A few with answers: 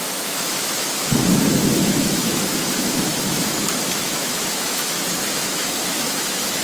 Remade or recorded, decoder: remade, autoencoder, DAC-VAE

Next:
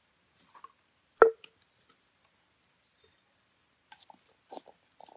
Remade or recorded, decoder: recorded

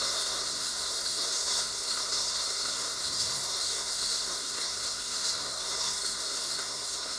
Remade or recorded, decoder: remade, codec, SNAC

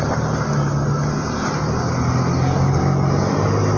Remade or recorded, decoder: recorded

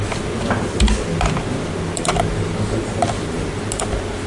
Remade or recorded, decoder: recorded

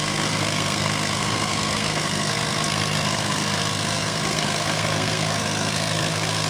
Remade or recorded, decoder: remade, codec, SNAC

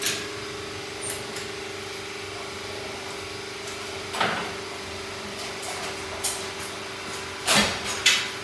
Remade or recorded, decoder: recorded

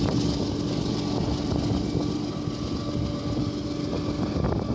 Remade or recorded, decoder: recorded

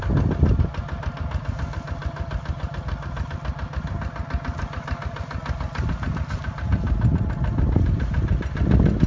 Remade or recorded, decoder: recorded